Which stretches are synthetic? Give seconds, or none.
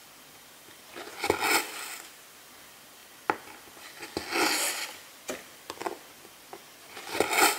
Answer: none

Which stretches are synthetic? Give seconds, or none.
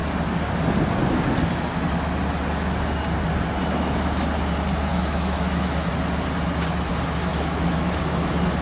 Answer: 4.9-5.9 (autoencoder, DAC-VAE); 7.3-8.0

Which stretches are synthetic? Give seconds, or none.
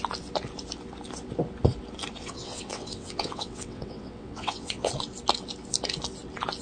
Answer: 2.2-4.9 (vocoder, WaveNeXt)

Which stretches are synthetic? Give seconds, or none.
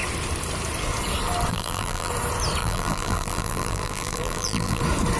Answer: 1.5-2.1 (vocoder, BigVGAN v2); 2.6-4.8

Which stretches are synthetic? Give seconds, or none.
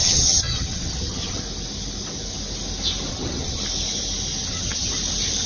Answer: 0.0-1.4 (vocoder, HiFi-GAN); 3.1-3.6; 4.4-4.9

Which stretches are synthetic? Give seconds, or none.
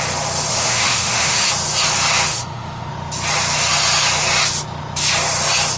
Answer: 0.5-1.5 (autoencoder, DAC-VAE); 2.3-2.9